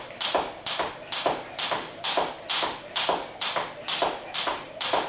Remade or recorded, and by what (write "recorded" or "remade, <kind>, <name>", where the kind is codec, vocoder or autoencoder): recorded